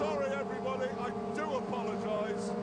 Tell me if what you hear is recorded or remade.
recorded